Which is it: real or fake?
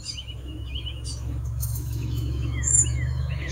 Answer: fake